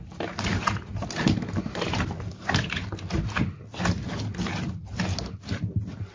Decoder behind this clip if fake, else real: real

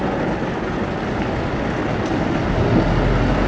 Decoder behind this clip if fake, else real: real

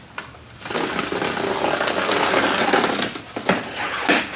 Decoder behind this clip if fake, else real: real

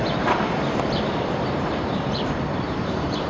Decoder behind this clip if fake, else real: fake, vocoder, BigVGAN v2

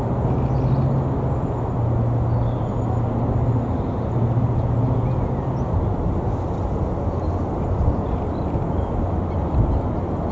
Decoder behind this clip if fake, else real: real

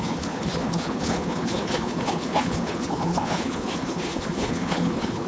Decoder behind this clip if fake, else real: fake, codec, HILCodec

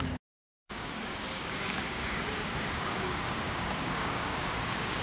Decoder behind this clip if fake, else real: fake, codec, DAC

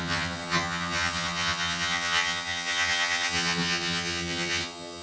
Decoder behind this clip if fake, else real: fake, vocoder, HiFi-GAN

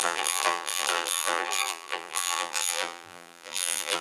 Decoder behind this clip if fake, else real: fake, vocoder, BigVGAN v2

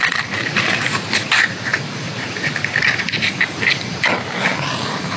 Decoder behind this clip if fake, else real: real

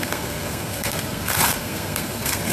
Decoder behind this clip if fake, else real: fake, codec, SNAC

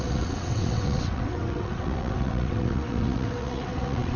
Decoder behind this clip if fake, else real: fake, vocoder, WaveNeXt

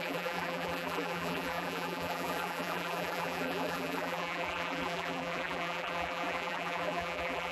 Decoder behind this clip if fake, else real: fake, vocoder, BigVGAN v2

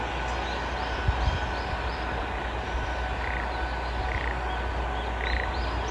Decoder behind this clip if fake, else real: real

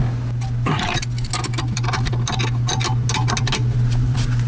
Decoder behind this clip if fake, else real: real